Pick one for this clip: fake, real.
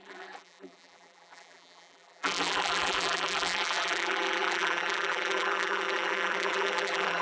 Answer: fake